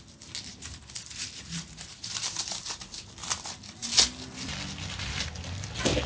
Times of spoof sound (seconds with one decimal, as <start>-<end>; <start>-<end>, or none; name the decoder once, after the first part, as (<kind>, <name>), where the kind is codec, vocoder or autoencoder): 0.5-3.1 (vocoder, BigVGAN v2)